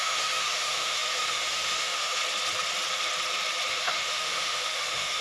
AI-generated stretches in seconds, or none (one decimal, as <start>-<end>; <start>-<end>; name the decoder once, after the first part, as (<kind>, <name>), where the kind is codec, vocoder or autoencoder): 0.0-2.2 (autoencoder, DAC-VAE); 3.7-5.2